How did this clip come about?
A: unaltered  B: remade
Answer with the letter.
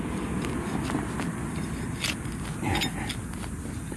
A